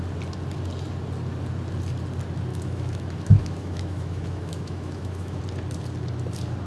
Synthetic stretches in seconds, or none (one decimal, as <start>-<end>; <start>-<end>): 2.5-5.4